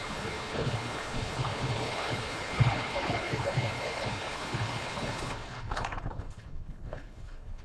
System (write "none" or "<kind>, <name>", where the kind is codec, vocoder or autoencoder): codec, HILCodec